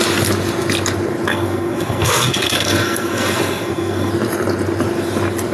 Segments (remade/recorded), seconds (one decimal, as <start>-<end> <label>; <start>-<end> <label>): 0.0-1.3 recorded; 1.3-4.1 remade; 4.1-5.5 recorded